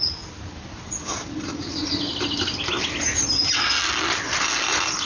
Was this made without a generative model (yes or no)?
yes